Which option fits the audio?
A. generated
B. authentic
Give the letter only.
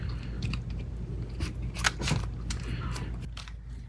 B